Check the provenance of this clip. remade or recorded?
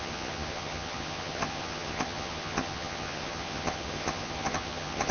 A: remade